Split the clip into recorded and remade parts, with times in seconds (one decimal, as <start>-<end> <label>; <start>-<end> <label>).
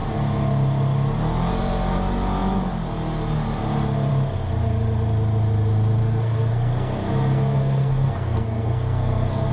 0.0-6.0 recorded; 6.0-9.5 remade